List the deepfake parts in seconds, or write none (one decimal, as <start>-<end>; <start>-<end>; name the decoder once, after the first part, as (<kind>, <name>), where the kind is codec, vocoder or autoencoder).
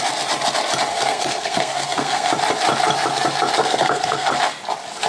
0.9-2.3 (codec, SNAC); 3.6-4.3